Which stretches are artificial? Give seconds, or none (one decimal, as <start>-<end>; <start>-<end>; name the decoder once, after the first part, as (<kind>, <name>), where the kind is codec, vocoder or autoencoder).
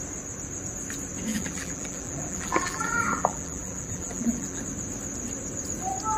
1.3-4.6 (vocoder, BigVGAN v2)